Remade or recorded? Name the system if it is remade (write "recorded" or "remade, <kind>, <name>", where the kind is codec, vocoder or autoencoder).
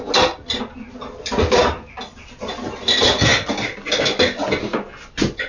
recorded